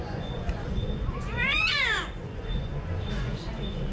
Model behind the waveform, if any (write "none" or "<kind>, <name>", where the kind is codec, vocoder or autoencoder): vocoder, Vocos